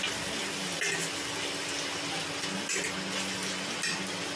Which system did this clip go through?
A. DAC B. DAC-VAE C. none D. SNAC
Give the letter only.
C